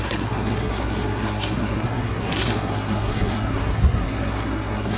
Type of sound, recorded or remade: remade